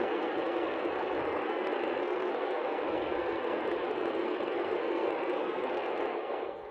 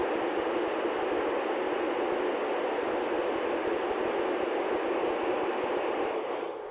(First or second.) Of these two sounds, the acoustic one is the second